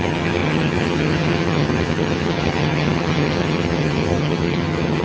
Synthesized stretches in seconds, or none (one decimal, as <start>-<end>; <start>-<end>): 0.0-5.0